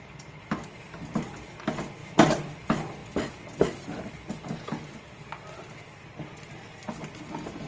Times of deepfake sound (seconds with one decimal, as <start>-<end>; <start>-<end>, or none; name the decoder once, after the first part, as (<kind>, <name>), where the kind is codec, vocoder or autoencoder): 2.0-2.5 (vocoder, BigVGAN v2)